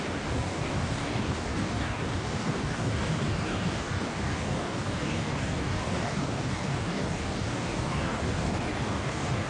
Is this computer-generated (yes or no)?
yes